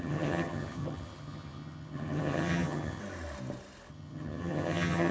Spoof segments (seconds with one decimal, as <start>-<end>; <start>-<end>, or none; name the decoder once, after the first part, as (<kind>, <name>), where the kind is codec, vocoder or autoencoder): 0.0-3.0 (vocoder, HiFi-GAN); 3.9-5.1